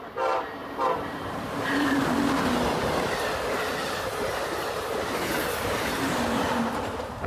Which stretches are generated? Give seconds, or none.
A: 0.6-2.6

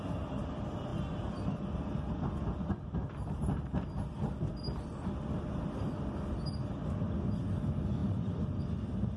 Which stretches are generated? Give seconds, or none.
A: 4.5-5.1; 8.0-8.6

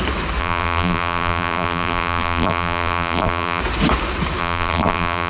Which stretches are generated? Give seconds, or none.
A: 0.4-3.6; 4.4-5.3

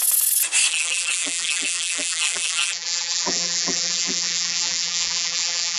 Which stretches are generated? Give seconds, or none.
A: 0.7-5.8

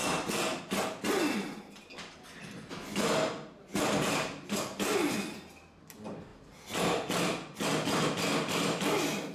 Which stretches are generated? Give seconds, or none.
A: none

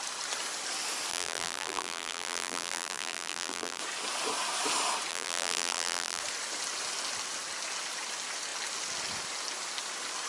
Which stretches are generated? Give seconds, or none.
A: 1.1-3.8; 5.1-6.2

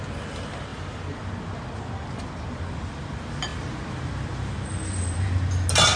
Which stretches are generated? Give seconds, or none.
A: 0.7-1.3